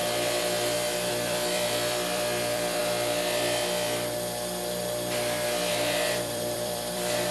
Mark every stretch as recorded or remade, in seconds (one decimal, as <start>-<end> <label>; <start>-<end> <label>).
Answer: 0.0-1.1 recorded; 1.1-2.8 remade; 2.8-5.7 recorded; 5.7-7.3 remade